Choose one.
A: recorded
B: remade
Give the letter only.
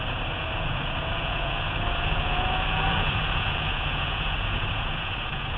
B